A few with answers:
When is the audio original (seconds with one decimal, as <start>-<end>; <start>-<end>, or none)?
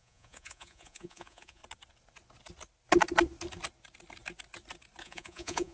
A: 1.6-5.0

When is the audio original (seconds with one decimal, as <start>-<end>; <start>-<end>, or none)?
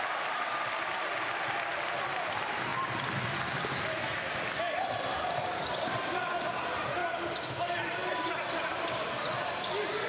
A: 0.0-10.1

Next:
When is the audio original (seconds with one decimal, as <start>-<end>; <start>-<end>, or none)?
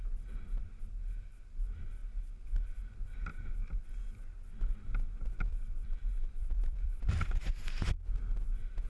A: 0.0-5.5; 6.9-8.9